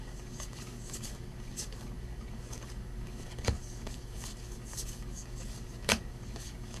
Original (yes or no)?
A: no